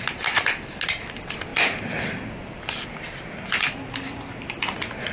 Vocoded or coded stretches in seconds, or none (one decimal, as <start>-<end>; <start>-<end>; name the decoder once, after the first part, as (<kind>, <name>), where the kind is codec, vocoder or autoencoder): 1.5-4.6 (vocoder, BigVGAN v2)